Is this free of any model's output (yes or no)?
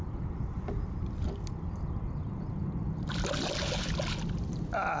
yes